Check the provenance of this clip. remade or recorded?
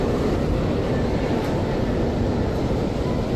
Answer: recorded